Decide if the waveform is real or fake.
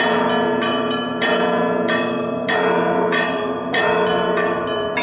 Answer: fake